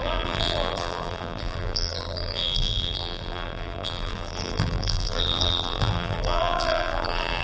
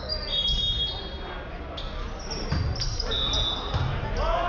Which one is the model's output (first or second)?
first